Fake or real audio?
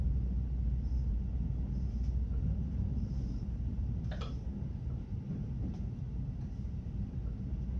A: fake